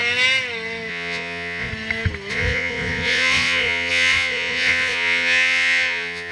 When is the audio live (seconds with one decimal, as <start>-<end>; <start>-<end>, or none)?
0.0-0.9; 1.7-2.3